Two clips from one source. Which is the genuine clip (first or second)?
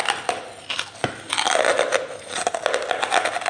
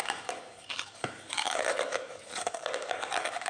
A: first